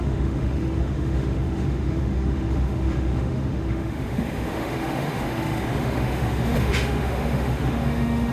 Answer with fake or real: fake